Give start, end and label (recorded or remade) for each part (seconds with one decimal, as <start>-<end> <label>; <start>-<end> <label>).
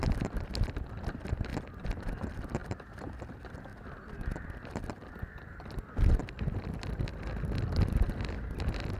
0.0-2.6 recorded; 2.6-3.2 remade; 3.2-9.0 recorded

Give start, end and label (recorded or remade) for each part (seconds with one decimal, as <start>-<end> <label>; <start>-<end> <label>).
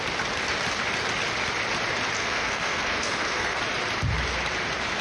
0.0-2.2 recorded; 2.2-3.6 remade; 3.6-5.0 recorded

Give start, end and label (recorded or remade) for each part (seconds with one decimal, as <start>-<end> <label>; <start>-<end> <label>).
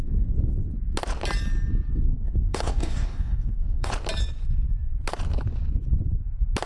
0.0-2.1 recorded; 2.1-3.9 remade; 3.9-6.7 recorded